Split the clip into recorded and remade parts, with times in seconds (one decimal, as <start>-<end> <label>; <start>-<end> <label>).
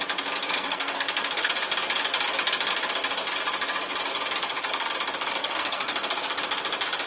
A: 0.0-0.4 recorded; 0.4-1.5 remade; 1.5-5.4 recorded; 5.4-6.1 remade; 6.1-7.1 recorded